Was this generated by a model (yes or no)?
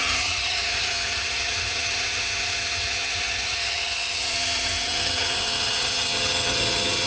yes